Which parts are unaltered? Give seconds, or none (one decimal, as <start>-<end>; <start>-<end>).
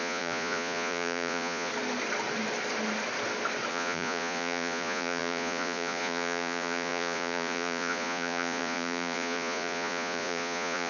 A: 1.7-3.7